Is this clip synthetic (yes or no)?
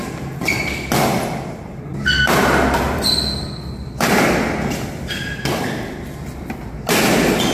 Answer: no